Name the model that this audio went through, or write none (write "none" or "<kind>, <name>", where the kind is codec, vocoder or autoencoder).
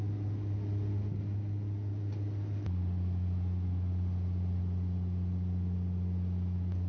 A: none